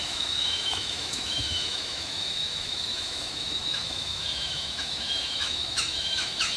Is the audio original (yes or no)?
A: no